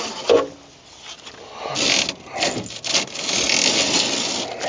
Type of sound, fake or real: real